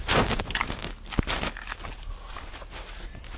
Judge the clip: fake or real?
real